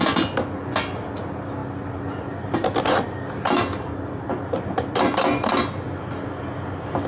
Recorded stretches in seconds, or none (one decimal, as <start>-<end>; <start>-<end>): 0.0-7.1